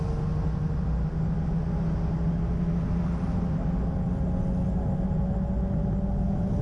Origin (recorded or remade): recorded